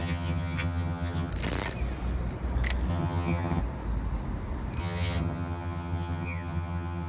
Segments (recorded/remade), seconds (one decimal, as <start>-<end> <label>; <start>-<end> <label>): 0.0-1.3 remade; 1.3-2.9 recorded; 2.9-3.6 remade; 3.6-4.8 recorded; 4.8-7.1 remade